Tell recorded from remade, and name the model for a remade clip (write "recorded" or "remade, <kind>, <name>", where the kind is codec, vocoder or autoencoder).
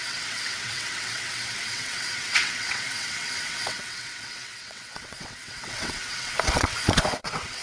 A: remade, vocoder, WaveNeXt